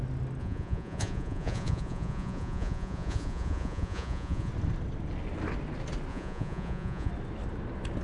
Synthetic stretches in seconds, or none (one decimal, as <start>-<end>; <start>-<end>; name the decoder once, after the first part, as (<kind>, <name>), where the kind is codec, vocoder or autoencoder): 0.4-4.5 (vocoder, Vocos); 6.1-7.1